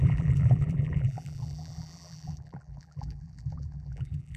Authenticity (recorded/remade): remade